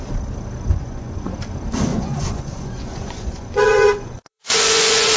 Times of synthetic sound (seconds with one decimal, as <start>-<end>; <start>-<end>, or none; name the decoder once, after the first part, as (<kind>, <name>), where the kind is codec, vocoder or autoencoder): 0.7-1.3 (vocoder, Vocos); 1.9-5.2